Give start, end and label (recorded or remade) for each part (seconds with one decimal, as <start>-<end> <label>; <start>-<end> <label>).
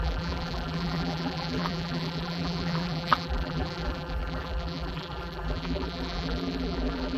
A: 0.0-7.2 remade